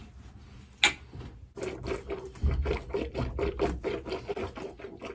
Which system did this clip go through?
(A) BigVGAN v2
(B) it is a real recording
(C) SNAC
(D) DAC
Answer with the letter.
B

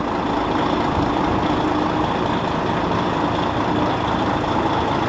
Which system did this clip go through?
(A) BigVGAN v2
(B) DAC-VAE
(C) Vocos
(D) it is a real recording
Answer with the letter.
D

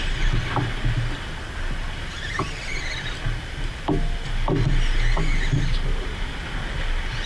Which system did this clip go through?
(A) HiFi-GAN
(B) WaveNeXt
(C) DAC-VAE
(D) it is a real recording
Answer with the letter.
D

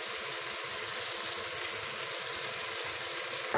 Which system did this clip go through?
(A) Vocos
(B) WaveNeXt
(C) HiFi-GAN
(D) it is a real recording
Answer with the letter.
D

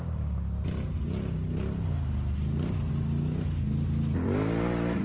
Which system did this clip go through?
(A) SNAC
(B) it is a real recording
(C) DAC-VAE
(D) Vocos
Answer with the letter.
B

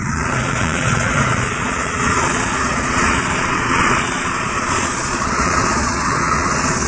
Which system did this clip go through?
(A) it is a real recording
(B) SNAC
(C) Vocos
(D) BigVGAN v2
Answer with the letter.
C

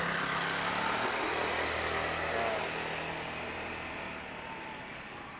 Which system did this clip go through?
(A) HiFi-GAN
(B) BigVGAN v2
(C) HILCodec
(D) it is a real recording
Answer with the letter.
D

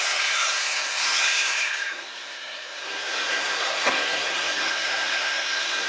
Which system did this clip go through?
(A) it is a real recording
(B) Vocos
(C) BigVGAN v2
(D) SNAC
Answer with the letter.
D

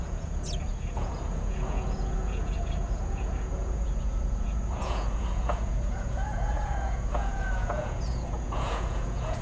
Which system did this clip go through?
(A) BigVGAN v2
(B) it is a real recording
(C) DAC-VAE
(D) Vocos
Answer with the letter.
D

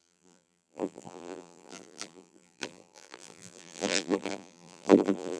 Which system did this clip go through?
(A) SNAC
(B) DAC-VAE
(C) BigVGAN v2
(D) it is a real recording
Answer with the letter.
C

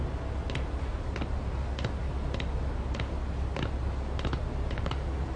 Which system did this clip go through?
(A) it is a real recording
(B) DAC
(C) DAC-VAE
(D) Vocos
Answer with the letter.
A